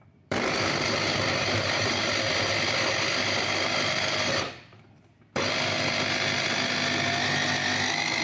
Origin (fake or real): fake